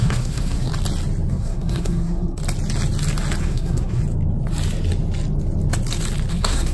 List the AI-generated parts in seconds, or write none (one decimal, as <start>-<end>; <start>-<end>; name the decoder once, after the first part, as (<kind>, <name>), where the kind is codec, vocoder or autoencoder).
0.0-0.7 (codec, SNAC); 1.3-2.4; 3.4-4.0; 6.3-6.7